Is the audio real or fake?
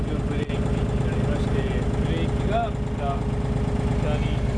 real